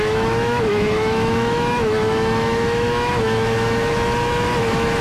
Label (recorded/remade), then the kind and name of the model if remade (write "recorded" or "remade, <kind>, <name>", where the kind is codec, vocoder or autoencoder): remade, autoencoder, DAC-VAE